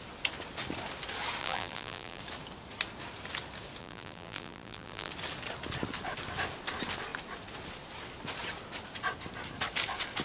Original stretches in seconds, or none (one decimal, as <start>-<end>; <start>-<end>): 0.0-1.4; 2.2-3.8; 5.1-10.2